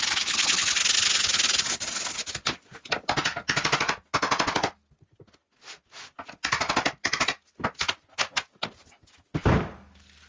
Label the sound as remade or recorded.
recorded